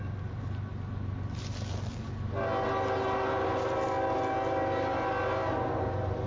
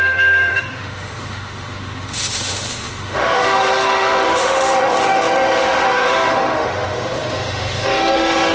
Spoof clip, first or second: second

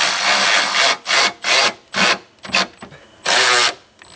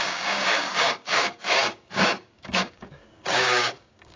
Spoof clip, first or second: second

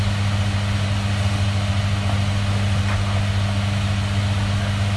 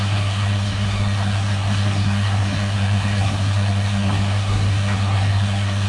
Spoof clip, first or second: second